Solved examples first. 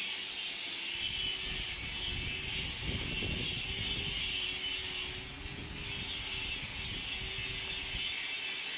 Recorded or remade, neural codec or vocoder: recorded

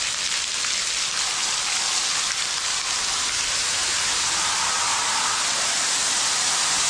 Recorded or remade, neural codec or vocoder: recorded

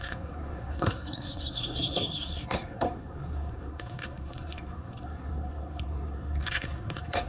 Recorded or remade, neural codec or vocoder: remade, codec, SNAC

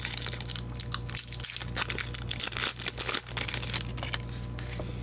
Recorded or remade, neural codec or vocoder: recorded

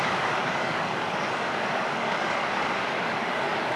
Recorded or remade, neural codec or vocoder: remade, codec, DAC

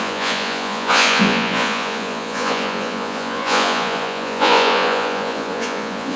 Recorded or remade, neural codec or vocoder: remade, vocoder, Vocos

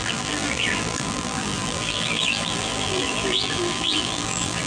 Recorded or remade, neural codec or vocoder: remade, vocoder, BigVGAN v2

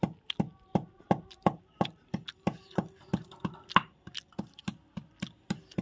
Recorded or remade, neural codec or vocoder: recorded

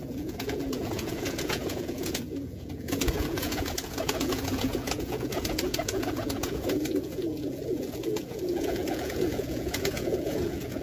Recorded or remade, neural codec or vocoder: remade, vocoder, Vocos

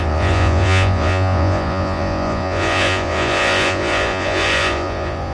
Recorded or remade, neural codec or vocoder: remade, vocoder, Vocos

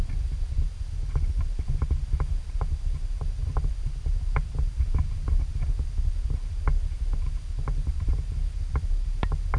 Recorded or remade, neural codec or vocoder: recorded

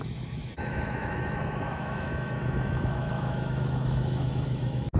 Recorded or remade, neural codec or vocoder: remade, autoencoder, DAC-VAE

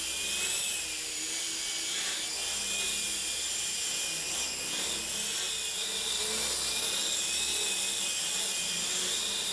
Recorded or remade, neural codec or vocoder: recorded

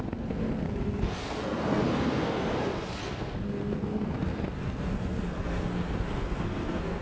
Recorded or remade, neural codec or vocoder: remade, codec, SNAC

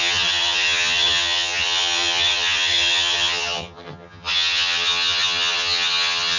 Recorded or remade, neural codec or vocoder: remade, vocoder, HiFi-GAN